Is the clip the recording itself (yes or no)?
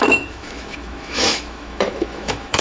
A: no